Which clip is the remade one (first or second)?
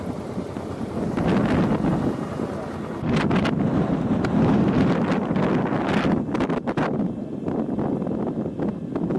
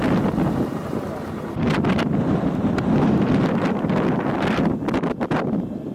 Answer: second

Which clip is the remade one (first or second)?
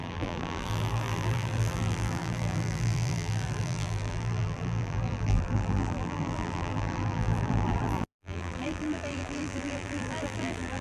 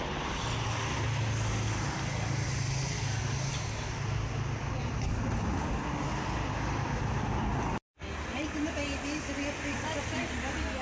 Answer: first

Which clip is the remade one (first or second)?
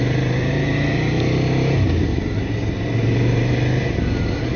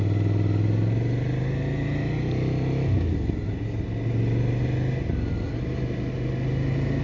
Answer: first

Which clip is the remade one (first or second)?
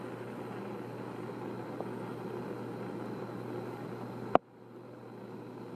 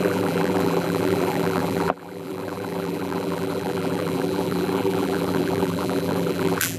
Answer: second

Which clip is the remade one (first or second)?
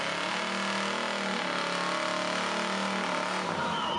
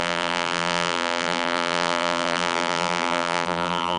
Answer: second